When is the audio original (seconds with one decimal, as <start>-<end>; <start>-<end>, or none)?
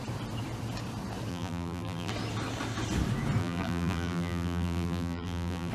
0.0-1.3; 2.1-3.4